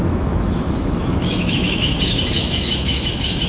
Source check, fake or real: fake